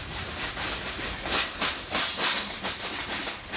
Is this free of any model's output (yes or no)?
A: yes